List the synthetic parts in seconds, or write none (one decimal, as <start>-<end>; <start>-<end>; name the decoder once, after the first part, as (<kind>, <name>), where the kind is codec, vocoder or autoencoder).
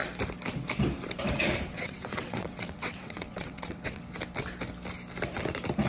1.7-4.0 (vocoder, WaveNeXt)